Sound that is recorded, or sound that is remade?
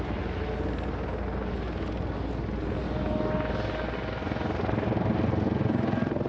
recorded